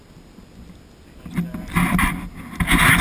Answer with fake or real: real